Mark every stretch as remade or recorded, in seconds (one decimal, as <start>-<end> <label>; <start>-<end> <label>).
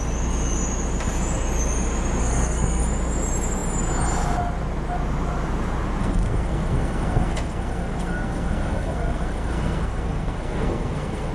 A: 0.0-2.2 recorded; 2.2-2.8 remade; 2.8-6.0 recorded; 6.0-11.3 remade